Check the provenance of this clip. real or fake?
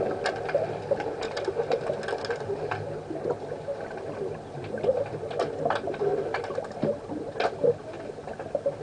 real